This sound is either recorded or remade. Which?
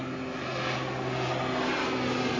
recorded